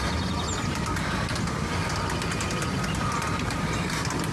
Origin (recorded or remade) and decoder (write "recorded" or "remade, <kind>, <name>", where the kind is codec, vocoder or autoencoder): recorded